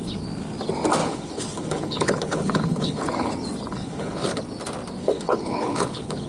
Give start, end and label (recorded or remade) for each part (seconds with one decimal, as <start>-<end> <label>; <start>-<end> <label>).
0.0-1.0 recorded; 1.0-3.3 remade; 3.3-3.7 recorded; 3.7-4.4 remade; 4.4-5.0 recorded; 5.0-6.3 remade